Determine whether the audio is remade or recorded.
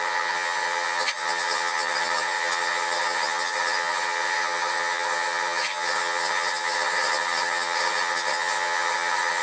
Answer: remade